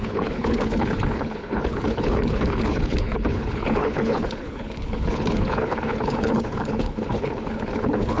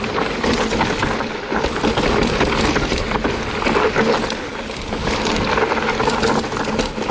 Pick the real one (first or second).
second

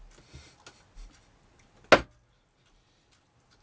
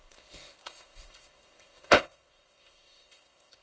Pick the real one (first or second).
first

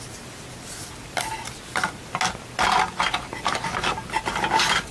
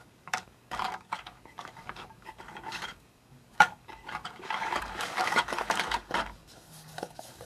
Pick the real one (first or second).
first